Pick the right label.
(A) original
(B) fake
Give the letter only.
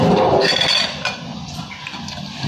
A